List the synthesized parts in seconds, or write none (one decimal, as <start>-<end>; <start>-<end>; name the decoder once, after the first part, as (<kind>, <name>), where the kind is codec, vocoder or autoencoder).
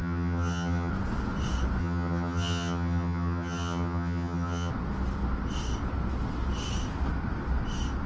0.0-0.9 (vocoder, HiFi-GAN); 1.8-4.7